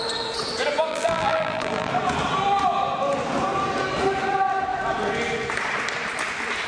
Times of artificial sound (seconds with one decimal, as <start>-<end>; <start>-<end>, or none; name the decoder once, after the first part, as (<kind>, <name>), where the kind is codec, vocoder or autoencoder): 0.9-1.9 (vocoder, BigVGAN v2)